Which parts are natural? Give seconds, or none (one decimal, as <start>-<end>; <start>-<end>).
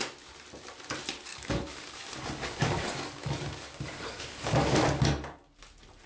0.0-1.3; 5.0-6.1